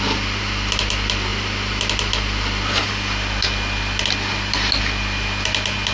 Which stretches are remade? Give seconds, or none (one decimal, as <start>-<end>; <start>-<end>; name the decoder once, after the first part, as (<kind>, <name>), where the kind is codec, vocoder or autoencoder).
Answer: none